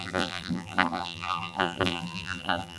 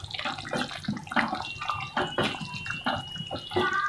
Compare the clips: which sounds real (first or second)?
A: second